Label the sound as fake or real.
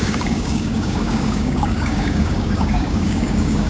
fake